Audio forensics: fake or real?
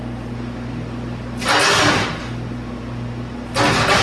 real